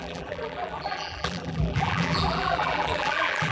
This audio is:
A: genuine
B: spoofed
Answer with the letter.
B